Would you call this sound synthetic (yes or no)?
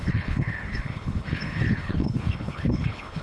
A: yes